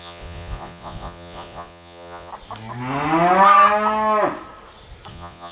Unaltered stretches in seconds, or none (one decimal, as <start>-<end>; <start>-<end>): 2.3-5.1